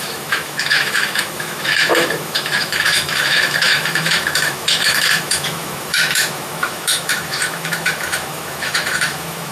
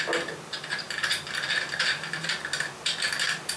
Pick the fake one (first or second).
first